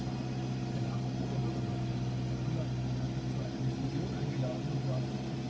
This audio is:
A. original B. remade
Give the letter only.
A